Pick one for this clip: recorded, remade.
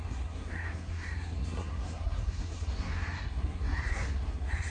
remade